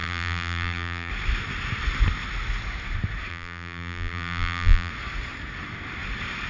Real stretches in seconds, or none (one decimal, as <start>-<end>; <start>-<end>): 1.1-3.3; 4.9-6.5